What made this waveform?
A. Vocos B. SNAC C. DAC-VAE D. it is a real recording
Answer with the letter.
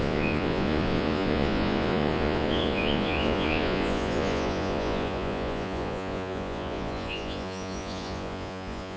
A